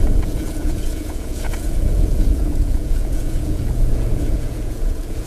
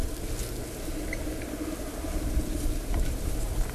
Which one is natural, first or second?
second